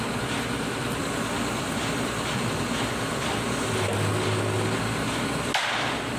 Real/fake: real